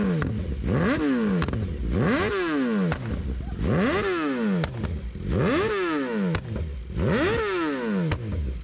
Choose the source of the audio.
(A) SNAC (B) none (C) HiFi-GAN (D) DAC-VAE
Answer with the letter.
B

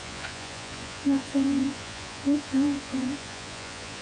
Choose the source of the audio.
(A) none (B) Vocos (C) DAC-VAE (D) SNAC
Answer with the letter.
B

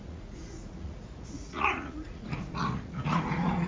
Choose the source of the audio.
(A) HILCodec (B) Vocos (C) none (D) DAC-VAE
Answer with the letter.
B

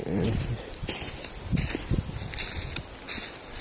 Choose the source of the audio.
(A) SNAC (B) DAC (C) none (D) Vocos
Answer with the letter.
C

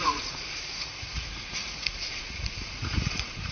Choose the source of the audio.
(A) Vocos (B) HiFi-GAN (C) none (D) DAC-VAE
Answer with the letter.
A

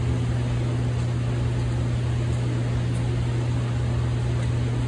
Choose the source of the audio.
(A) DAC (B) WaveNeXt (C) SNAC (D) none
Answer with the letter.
D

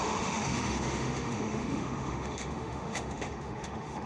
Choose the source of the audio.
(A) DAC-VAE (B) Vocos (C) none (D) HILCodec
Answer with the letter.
A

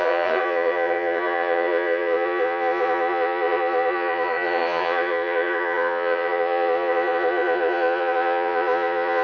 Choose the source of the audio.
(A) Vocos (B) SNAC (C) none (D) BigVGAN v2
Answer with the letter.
A